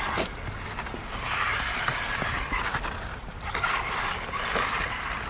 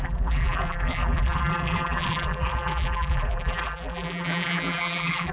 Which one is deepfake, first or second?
second